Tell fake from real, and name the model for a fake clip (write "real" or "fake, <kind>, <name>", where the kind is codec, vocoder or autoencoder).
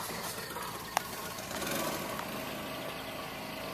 real